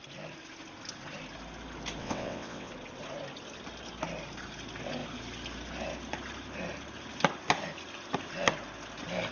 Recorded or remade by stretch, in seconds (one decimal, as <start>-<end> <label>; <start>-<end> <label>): 0.0-2.0 recorded; 2.0-2.7 remade; 2.7-9.3 recorded